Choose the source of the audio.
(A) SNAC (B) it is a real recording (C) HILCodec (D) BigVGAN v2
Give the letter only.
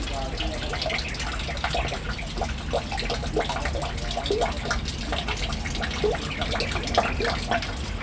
B